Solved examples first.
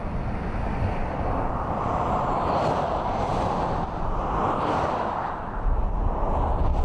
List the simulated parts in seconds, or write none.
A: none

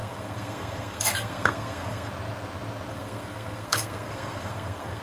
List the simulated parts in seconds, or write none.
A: 0.0-2.1 (codec, SNAC); 2.9-5.0

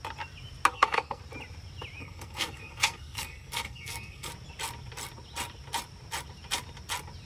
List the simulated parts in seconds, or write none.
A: 0.7-1.2 (codec, SNAC); 2.0-4.3